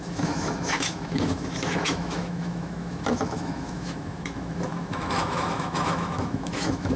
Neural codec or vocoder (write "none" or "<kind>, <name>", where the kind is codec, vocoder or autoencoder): autoencoder, DAC-VAE